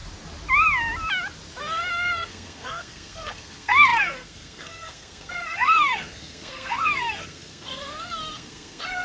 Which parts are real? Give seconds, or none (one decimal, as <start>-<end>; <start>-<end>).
0.0-1.6